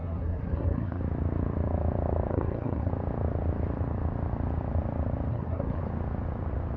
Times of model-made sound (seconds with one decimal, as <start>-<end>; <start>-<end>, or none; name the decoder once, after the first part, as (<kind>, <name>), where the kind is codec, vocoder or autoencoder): 0.0-1.0 (codec, SNAC); 2.3-2.9; 5.3-5.8

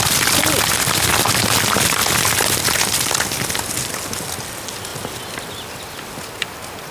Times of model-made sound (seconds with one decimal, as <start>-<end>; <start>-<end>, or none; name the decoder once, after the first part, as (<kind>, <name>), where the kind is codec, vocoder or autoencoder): none